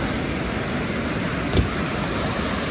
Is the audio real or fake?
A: real